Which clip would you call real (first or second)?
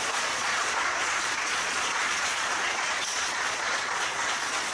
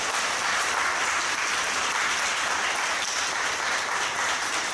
second